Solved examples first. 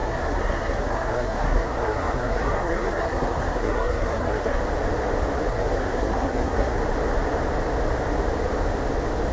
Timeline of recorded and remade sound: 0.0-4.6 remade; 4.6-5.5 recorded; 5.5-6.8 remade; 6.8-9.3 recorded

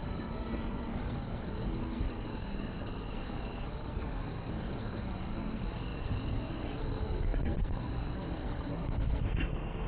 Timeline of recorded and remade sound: 0.0-9.9 remade

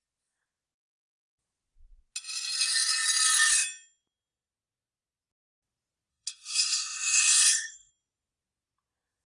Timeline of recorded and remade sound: 0.0-6.1 recorded; 6.1-7.9 remade; 7.9-9.3 recorded

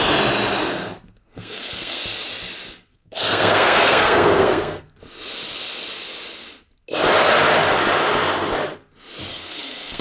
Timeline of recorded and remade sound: 0.0-0.9 recorded; 0.9-2.0 remade; 2.0-2.9 recorded; 2.9-5.0 remade; 5.0-9.3 recorded; 9.3-10.0 remade

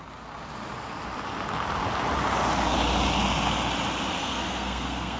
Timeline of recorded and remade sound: 0.0-4.2 recorded; 4.2-5.2 remade

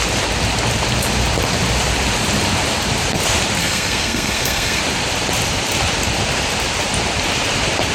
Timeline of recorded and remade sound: 0.0-3.6 recorded; 3.6-4.8 remade; 4.8-7.9 recorded

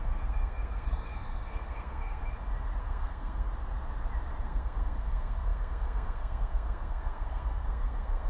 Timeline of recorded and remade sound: 0.0-2.2 remade; 2.2-2.8 recorded; 2.8-3.5 remade; 3.5-4.4 recorded; 4.4-8.3 remade

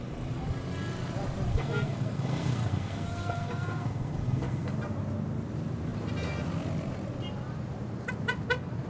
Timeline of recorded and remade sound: 0.0-1.5 recorded; 1.5-4.7 remade; 4.7-8.9 recorded